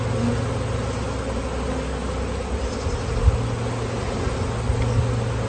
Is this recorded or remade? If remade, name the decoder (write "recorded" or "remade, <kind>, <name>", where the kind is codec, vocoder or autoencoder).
recorded